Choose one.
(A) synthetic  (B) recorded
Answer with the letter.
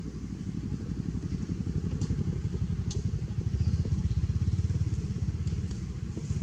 A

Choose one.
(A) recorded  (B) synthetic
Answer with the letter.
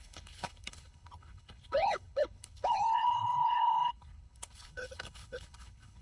B